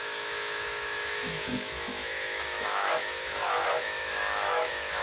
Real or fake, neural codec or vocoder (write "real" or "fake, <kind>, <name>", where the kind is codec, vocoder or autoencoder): fake, autoencoder, DAC-VAE